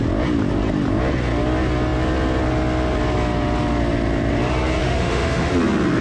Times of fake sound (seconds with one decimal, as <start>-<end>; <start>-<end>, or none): 4.8-5.5